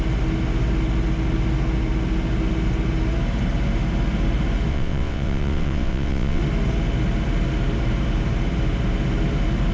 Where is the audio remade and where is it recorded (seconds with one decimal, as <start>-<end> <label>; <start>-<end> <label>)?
0.0-4.7 recorded; 4.7-6.4 remade; 6.4-9.7 recorded